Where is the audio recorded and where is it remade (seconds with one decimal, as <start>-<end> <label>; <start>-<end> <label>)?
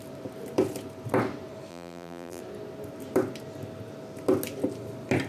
0.0-1.7 recorded; 1.7-2.4 remade; 2.4-5.3 recorded